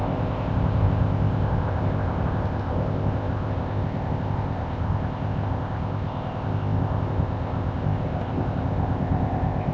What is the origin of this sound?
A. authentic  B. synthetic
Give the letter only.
B